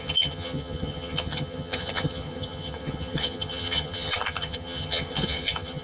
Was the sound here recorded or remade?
remade